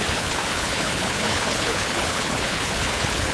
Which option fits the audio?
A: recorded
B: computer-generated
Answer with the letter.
B